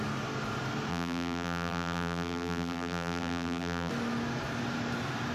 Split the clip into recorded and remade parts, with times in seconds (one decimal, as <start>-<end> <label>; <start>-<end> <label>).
0.0-0.9 recorded; 0.9-3.9 remade; 3.9-5.3 recorded